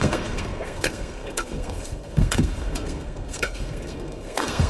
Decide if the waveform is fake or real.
fake